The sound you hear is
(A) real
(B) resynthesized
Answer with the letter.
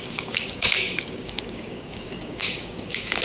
B